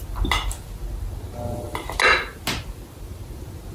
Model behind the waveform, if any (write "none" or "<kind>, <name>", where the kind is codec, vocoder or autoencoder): none